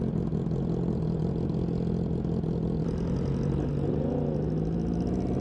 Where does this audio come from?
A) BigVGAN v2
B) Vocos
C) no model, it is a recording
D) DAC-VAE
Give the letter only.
C